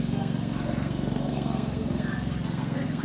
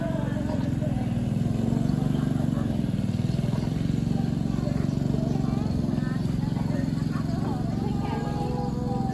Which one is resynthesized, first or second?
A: first